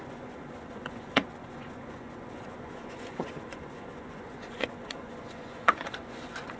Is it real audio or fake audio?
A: fake